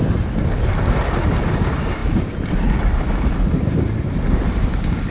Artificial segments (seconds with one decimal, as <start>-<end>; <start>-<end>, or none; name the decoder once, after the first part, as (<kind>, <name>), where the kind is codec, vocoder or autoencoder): none